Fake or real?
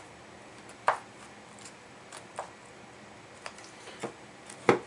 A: real